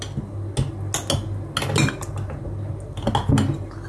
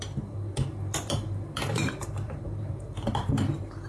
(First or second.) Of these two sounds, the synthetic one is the second